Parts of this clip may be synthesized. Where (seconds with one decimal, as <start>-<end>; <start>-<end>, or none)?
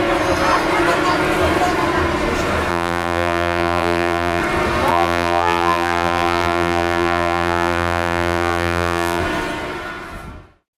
2.7-4.4; 4.9-9.2